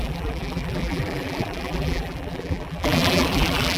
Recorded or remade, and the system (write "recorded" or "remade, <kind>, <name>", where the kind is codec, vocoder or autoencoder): remade, vocoder, BigVGAN v2